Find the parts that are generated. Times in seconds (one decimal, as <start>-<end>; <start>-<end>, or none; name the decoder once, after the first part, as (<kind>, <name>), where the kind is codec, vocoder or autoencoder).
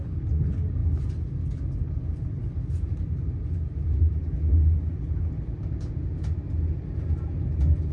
none